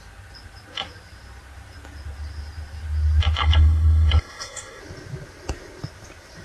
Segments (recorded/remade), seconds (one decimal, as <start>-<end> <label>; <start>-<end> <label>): 0.0-3.4 recorded; 3.4-4.8 remade; 4.8-6.4 recorded